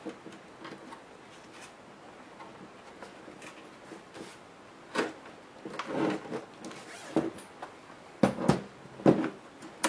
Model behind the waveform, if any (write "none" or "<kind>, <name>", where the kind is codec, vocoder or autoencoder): none